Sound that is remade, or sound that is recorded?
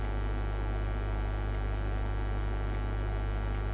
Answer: recorded